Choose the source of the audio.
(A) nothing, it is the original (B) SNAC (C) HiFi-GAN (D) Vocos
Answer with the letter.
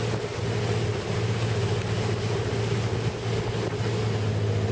A